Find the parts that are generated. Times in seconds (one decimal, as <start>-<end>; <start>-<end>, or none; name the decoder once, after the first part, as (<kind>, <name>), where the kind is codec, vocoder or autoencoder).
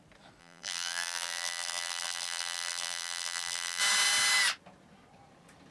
0.4-3.8 (vocoder, BigVGAN v2)